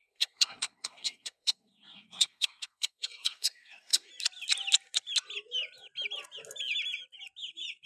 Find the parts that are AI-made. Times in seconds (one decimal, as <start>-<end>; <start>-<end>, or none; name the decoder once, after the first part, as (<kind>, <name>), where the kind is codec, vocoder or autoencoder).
0.0-4.1 (codec, SNAC)